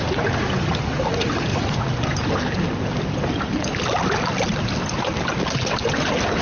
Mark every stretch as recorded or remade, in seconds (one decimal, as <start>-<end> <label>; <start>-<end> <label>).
0.0-1.5 recorded; 1.5-2.0 remade; 2.0-6.4 recorded